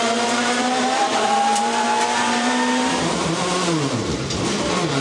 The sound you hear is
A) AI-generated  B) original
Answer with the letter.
A